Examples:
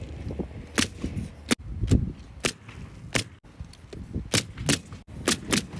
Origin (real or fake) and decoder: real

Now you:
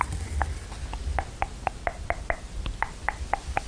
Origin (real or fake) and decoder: real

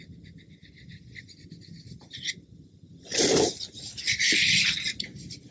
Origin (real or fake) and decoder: real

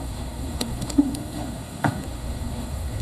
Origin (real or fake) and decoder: fake, codec, SNAC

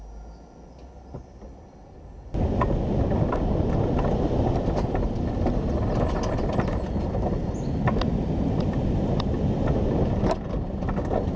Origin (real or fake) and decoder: real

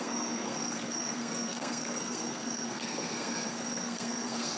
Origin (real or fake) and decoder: fake, codec, SNAC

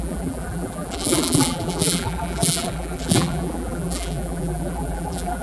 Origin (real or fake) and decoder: fake, vocoder, BigVGAN v2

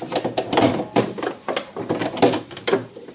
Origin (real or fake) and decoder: fake, vocoder, BigVGAN v2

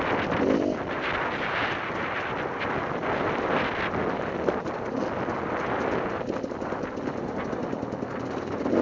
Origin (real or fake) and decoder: real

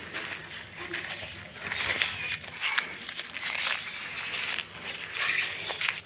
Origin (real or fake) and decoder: real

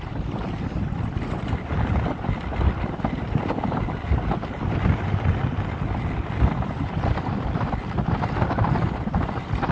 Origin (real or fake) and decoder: fake, vocoder, BigVGAN v2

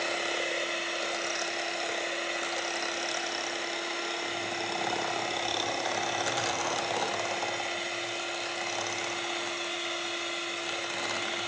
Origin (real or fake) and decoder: real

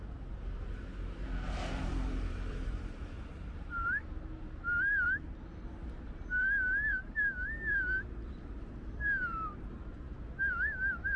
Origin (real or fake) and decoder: fake, vocoder, BigVGAN v2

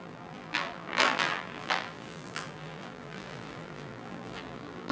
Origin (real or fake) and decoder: fake, vocoder, BigVGAN v2